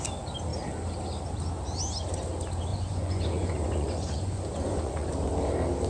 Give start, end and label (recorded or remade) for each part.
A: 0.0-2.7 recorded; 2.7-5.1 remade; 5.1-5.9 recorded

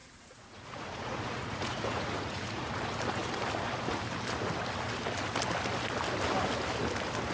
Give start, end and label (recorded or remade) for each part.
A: 0.0-2.7 remade; 2.7-7.3 recorded

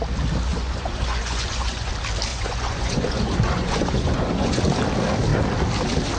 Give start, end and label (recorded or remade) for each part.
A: 0.0-0.5 recorded; 0.5-1.9 remade; 1.9-2.3 recorded; 2.3-4.6 remade; 4.6-6.2 recorded